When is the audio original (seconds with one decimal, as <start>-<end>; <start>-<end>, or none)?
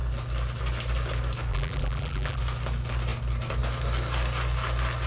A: 0.0-1.5; 2.4-5.1